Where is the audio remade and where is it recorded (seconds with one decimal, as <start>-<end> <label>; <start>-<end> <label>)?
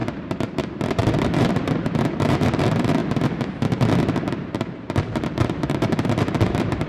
0.0-3.0 remade; 3.0-4.2 recorded; 4.2-6.9 remade